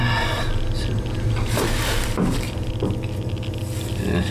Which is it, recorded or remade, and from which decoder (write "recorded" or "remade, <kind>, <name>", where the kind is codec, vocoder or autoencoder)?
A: recorded